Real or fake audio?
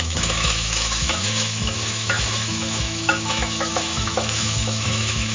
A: fake